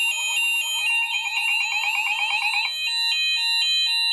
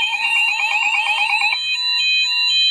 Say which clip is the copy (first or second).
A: second